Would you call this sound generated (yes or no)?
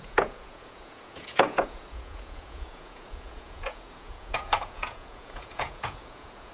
yes